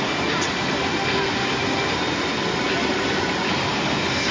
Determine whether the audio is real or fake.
real